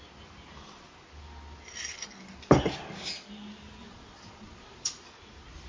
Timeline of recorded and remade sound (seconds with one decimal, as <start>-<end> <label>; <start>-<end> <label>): 0.0-3.8 recorded; 3.8-4.9 remade; 4.9-5.7 recorded